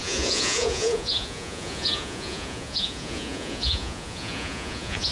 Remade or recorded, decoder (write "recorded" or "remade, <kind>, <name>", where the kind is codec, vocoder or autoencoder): remade, vocoder, Vocos